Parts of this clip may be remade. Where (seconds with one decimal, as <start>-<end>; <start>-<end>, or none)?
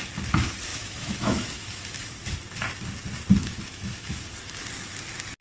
0.7-1.8; 3.4-4.2